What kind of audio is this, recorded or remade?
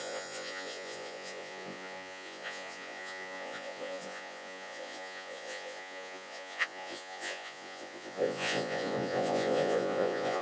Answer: remade